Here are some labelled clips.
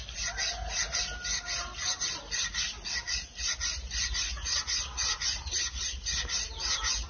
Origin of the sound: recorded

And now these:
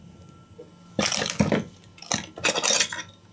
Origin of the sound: recorded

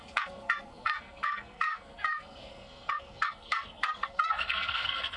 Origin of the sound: remade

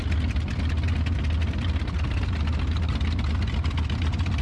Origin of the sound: recorded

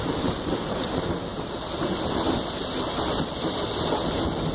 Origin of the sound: recorded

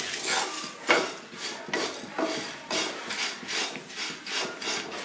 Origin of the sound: recorded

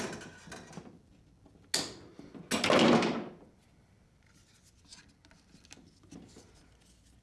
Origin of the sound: recorded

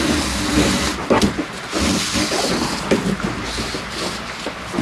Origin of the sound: recorded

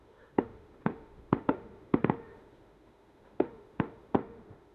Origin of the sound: remade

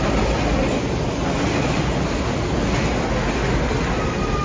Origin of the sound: recorded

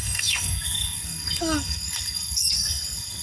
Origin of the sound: remade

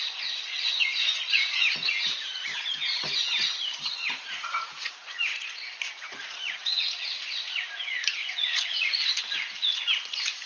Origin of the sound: remade